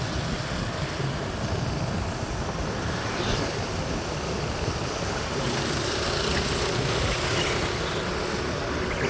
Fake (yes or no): no